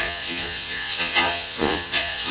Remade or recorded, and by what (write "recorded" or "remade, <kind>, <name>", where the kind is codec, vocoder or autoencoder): remade, vocoder, Vocos